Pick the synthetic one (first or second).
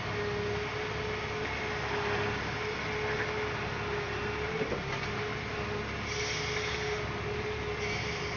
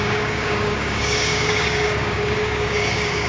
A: second